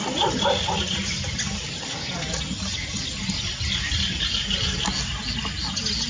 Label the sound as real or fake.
real